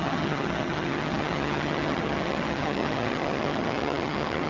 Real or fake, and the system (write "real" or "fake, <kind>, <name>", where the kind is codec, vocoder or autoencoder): fake, vocoder, HiFi-GAN